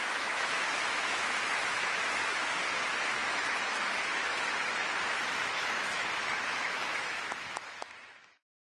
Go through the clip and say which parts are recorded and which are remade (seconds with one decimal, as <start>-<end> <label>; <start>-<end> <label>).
0.0-8.7 remade